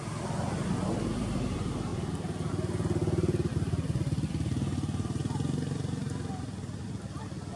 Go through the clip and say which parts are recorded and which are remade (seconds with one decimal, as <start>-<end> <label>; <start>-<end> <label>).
0.0-7.6 recorded